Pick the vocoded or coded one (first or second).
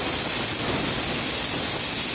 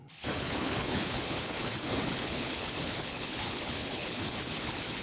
second